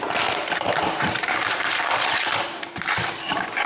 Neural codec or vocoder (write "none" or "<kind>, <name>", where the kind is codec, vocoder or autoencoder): vocoder, BigVGAN v2